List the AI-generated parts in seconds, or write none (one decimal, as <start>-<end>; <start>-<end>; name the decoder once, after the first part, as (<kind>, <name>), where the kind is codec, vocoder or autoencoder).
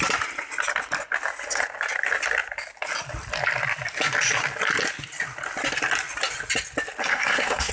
7.0-7.7 (codec, SNAC)